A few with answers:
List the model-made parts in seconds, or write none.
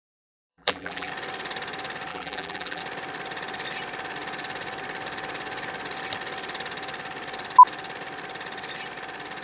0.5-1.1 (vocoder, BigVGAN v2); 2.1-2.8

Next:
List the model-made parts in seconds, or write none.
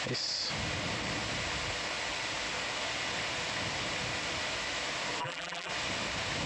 5.2-5.7 (vocoder, BigVGAN v2)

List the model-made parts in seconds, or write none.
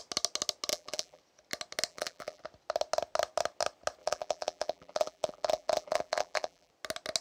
0.7-1.2 (vocoder, BigVGAN v2); 1.9-2.4; 4.0-6.7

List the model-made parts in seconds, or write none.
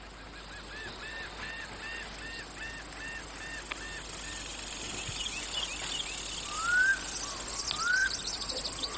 8.0-9.0 (vocoder, BigVGAN v2)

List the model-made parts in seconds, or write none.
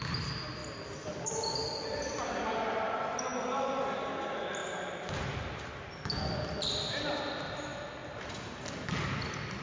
4.6-5.7 (vocoder, BigVGAN v2)